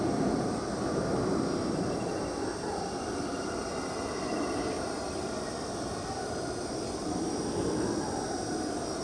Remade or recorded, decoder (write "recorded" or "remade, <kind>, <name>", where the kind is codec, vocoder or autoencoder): recorded